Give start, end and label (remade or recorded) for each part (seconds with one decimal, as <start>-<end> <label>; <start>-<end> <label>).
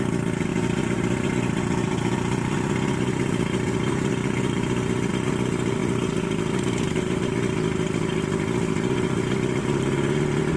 0.0-0.5 recorded; 0.5-5.1 remade; 5.1-5.8 recorded; 5.8-7.2 remade; 7.2-10.6 recorded